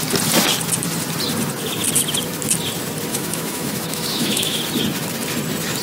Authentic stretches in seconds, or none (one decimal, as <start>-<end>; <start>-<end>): 0.0-3.1; 4.6-5.8

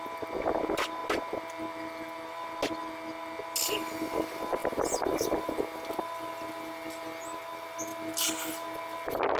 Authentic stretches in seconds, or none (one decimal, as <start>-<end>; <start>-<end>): 0.0-9.4